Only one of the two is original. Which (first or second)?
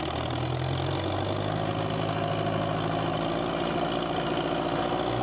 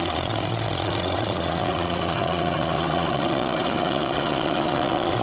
first